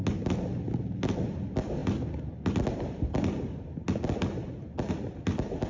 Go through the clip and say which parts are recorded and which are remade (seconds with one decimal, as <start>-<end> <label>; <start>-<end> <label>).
0.0-5.7 recorded